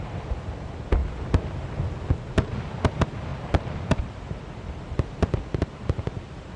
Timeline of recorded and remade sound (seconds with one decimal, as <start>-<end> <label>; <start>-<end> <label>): 0.0-6.6 recorded